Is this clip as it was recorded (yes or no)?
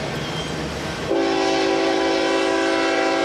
yes